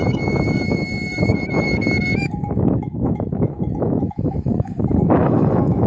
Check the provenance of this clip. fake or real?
fake